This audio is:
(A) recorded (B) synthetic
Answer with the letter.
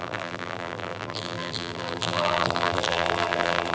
B